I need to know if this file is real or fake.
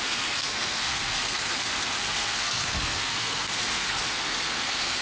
fake